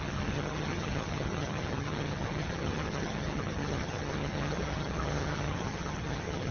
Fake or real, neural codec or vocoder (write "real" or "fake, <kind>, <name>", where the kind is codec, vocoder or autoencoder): fake, vocoder, HiFi-GAN